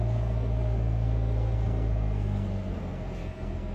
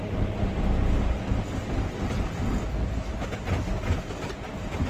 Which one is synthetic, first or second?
first